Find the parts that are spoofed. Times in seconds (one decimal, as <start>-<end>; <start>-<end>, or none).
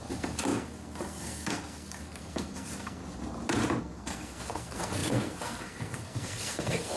0.0-3.0; 3.8-7.0